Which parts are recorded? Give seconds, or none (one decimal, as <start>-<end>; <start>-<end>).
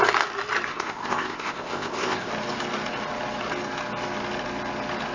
0.0-0.7; 2.3-5.1